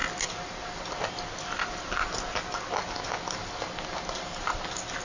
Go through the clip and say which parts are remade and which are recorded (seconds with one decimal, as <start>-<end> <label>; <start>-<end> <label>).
0.0-5.0 recorded

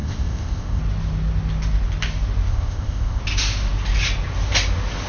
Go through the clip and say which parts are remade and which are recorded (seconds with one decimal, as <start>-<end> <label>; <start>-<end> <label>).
0.0-0.8 remade; 0.8-2.5 recorded; 2.5-3.2 remade; 3.2-5.1 recorded

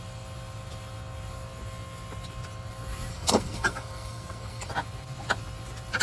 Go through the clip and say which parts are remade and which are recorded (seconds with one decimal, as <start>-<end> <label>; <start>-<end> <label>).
0.0-3.1 recorded; 3.1-4.7 remade; 4.7-6.0 recorded

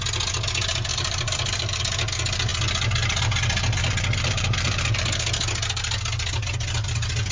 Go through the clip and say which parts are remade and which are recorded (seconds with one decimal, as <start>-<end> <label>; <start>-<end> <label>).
0.0-0.9 recorded; 0.9-1.8 remade; 1.8-7.3 recorded

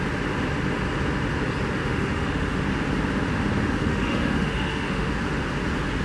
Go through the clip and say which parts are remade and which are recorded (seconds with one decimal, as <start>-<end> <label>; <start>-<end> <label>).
0.0-1.8 recorded; 1.8-2.6 remade; 2.6-3.8 recorded; 3.8-5.1 remade; 5.1-6.0 recorded